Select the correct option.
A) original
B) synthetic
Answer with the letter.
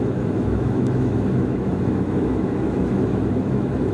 B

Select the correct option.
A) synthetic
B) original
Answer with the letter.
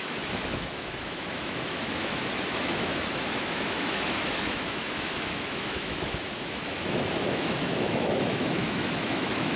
A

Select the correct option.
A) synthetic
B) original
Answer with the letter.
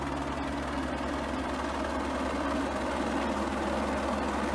B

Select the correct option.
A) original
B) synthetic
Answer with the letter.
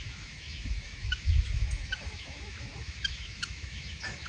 B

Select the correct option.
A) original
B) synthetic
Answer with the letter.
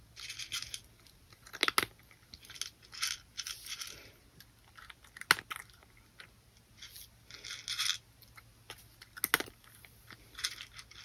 A